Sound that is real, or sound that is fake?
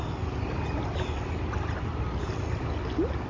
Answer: real